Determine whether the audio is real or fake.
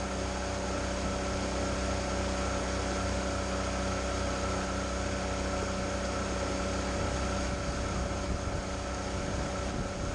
real